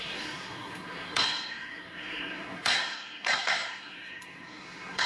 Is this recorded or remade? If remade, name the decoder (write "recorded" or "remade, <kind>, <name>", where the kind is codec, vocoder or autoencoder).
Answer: remade, codec, SNAC